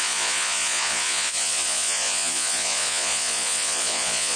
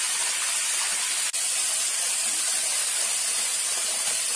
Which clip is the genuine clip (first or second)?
second